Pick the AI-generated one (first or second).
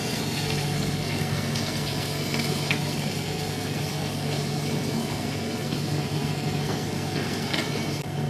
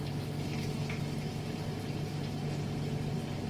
first